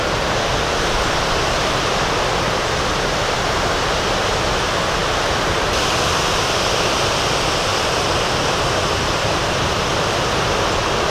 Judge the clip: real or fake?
real